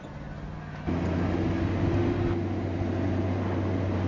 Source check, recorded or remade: recorded